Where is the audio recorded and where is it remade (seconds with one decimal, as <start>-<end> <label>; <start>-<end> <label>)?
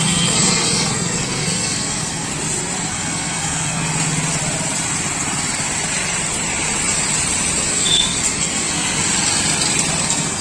0.0-2.3 remade; 2.3-2.9 recorded; 2.9-3.9 remade; 3.9-7.7 recorded; 7.7-9.0 remade; 9.0-10.0 recorded; 10.0-10.4 remade